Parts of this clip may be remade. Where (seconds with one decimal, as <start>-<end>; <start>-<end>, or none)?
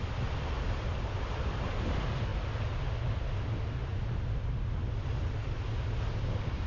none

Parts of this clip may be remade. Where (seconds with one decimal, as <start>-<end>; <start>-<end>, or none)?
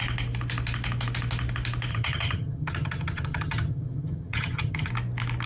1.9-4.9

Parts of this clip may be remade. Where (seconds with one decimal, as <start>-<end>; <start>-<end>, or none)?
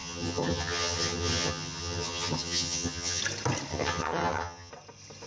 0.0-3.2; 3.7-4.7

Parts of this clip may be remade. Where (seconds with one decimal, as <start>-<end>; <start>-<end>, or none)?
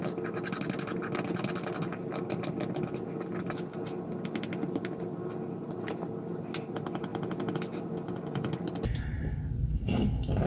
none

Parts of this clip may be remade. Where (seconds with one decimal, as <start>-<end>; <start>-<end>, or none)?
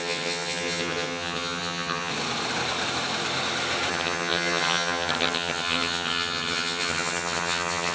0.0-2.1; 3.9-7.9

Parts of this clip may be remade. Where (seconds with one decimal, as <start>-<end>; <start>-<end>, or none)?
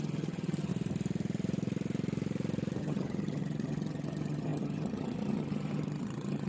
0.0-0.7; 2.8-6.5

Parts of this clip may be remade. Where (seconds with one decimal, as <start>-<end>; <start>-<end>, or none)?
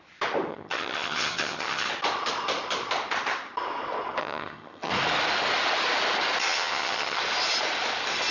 0.5-1.9; 4.2-4.9; 6.4-7.2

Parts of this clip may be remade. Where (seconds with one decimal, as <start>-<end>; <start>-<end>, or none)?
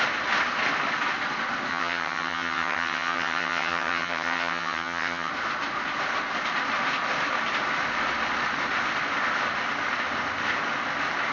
1.7-5.3